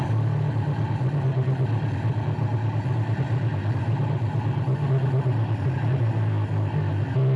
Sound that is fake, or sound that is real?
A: real